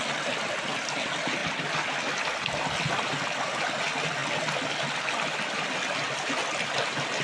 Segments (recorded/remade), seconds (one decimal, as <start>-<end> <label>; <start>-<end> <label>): 0.0-7.2 recorded